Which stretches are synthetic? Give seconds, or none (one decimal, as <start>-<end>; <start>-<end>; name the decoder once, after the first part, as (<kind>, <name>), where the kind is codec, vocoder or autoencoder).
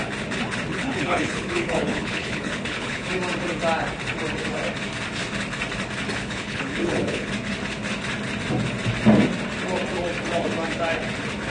0.7-3.1 (codec, HILCodec); 6.2-7.3